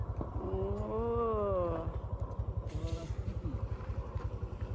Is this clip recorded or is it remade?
recorded